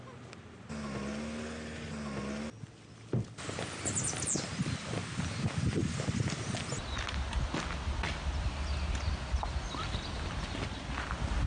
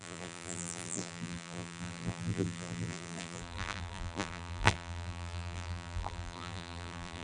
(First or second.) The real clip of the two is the first